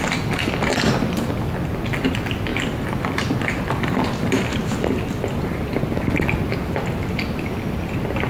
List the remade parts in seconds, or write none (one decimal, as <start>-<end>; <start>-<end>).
0.7-1.3; 2.5-6.1